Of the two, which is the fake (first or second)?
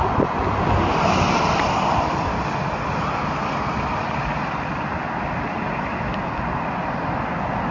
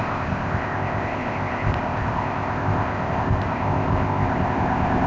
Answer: second